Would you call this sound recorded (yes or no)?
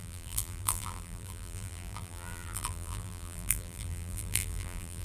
no